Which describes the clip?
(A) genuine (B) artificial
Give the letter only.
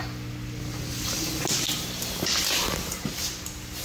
A